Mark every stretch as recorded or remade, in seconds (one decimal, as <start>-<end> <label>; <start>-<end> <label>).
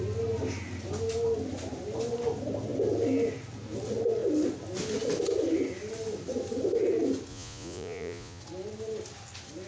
0.0-7.3 recorded; 7.3-8.4 remade; 8.4-9.7 recorded